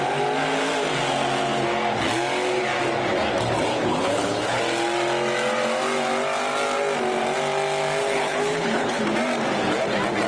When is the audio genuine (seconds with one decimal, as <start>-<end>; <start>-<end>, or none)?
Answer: 0.0-3.7; 4.6-8.0; 9.0-10.3